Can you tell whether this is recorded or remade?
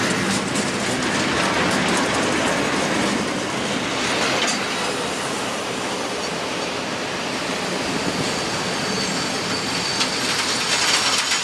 recorded